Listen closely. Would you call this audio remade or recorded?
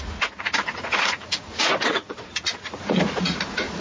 remade